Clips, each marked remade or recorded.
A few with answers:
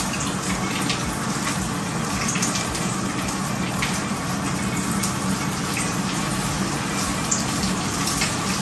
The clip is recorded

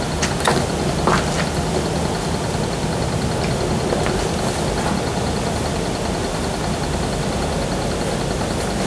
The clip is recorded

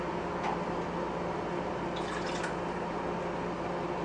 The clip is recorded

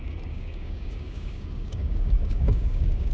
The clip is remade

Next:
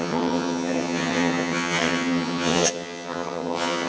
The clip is remade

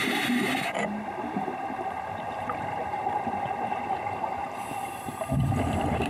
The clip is remade